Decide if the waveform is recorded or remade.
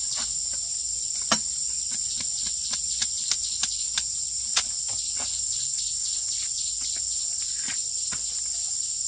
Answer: recorded